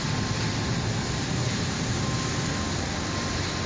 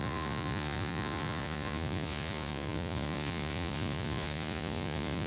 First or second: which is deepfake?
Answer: second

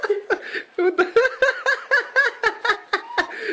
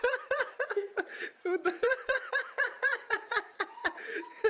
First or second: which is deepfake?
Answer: second